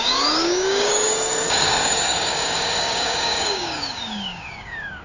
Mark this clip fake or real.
fake